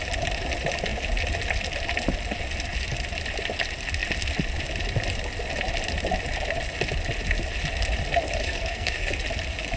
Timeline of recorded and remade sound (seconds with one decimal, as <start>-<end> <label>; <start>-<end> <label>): 0.0-8.4 recorded; 8.4-9.1 remade; 9.1-9.8 recorded